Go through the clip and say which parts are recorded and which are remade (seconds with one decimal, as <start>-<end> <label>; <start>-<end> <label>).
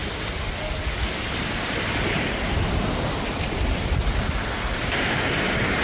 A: 0.0-5.8 recorded